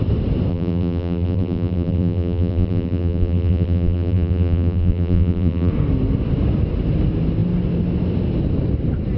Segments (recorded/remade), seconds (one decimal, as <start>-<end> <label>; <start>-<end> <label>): 0.0-0.5 recorded; 0.5-5.7 remade; 5.7-9.2 recorded